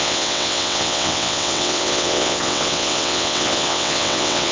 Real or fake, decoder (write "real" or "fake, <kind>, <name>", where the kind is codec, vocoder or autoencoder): fake, vocoder, WaveNeXt